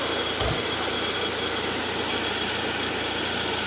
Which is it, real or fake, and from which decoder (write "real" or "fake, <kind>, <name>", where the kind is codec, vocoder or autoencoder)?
real